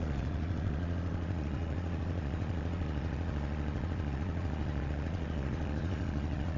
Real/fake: fake